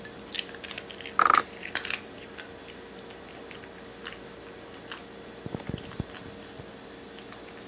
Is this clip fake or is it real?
real